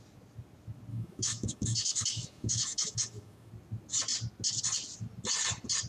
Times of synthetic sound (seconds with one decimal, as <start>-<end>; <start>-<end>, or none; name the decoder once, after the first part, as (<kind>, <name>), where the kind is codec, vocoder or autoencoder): 0.9-3.5 (autoencoder, DAC-VAE)